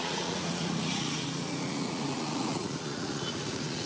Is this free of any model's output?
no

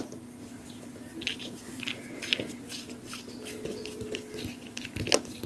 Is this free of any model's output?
yes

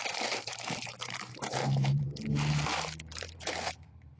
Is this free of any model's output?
no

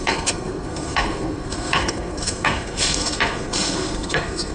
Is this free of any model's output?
no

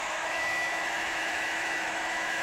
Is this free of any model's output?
no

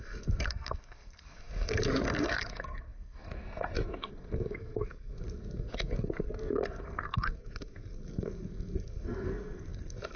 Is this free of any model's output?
no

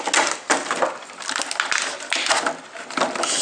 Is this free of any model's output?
yes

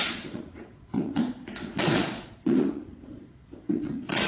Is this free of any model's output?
no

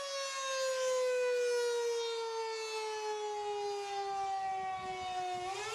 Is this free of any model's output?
yes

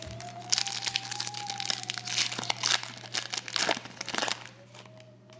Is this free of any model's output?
yes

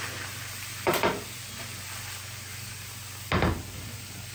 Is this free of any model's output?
yes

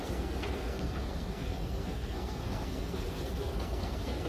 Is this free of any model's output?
no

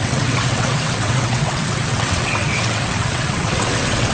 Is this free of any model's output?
no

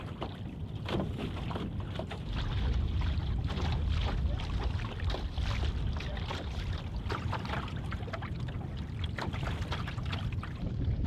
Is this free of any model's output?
no